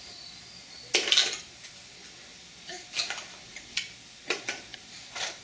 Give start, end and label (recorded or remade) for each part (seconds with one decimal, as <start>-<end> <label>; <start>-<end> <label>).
0.0-2.3 recorded; 2.3-3.7 remade; 3.7-4.7 recorded; 4.7-5.4 remade

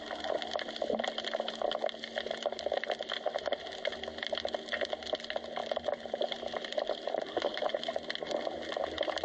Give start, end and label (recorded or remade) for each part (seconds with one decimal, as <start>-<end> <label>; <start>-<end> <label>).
0.0-5.6 recorded; 5.6-7.8 remade; 7.8-9.2 recorded